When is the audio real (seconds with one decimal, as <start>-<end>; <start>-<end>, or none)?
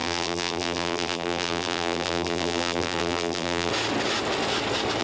3.7-5.0